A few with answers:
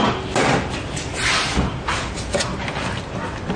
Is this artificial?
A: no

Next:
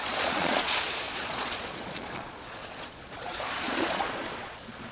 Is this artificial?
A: yes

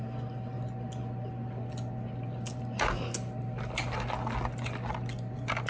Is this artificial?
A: no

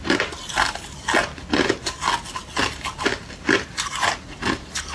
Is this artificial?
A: no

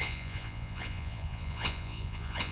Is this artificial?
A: yes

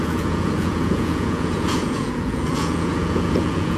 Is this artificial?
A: yes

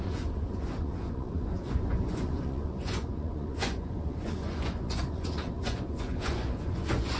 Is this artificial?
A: yes